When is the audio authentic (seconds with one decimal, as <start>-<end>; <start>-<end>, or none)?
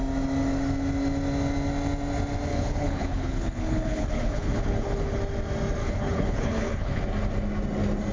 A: 0.0-2.5; 5.2-5.8; 7.0-8.1